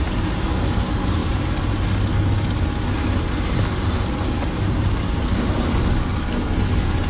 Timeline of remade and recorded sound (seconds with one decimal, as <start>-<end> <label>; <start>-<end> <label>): 0.0-7.1 recorded